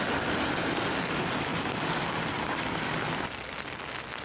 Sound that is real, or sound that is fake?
real